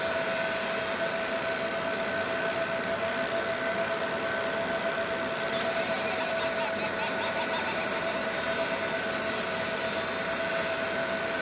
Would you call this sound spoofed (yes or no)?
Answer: no